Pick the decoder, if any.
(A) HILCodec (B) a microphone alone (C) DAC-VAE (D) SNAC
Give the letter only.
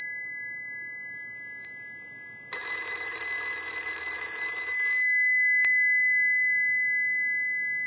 B